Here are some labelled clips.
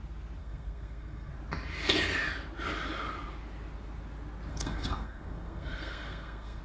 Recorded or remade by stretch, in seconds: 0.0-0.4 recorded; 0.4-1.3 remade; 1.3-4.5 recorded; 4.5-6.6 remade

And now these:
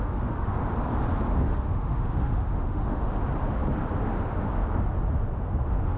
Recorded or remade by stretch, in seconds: 0.0-0.6 remade; 0.6-1.4 recorded; 1.4-3.2 remade; 3.2-4.1 recorded; 4.1-4.5 remade; 4.5-5.6 recorded; 5.6-6.0 remade

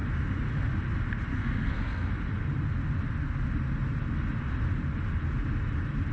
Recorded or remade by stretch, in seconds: 0.0-1.3 recorded; 1.3-2.1 remade; 2.1-6.1 recorded

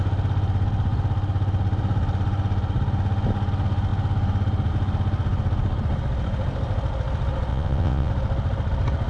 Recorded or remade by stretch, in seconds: 0.0-7.5 recorded; 7.5-8.1 remade; 8.1-9.1 recorded